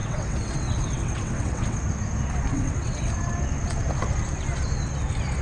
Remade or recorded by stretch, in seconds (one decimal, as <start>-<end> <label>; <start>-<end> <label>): 0.0-1.8 remade; 1.8-2.5 recorded; 2.5-3.1 remade; 3.1-5.4 recorded